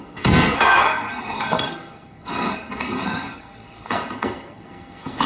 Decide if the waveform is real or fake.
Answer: fake